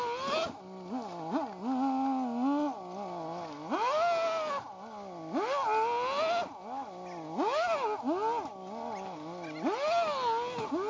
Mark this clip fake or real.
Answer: real